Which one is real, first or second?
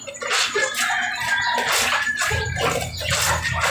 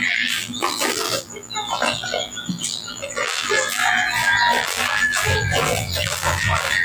first